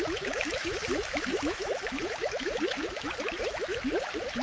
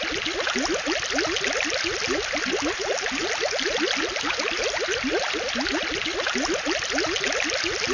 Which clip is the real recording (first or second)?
second